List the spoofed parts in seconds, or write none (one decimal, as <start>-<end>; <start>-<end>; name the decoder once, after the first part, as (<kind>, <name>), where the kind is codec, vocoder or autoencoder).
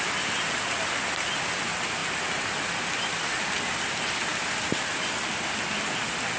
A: none